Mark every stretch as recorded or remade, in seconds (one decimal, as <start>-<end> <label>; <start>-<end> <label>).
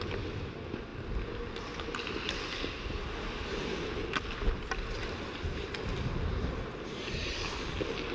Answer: 0.0-8.1 recorded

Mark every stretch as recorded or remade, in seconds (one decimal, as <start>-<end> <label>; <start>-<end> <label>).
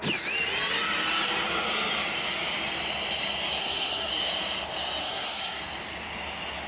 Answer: 0.0-3.6 recorded; 3.6-4.1 remade; 4.1-5.0 recorded; 5.0-5.6 remade; 5.6-6.7 recorded